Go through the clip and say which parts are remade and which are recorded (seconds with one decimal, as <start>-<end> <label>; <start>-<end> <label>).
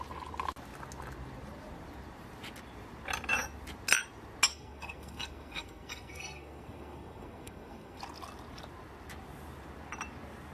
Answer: 0.0-4.5 recorded; 4.5-8.0 remade; 8.0-10.5 recorded